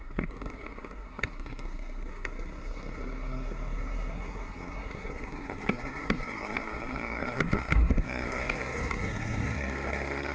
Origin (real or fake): fake